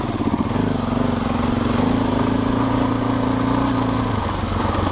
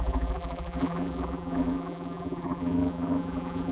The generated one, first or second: second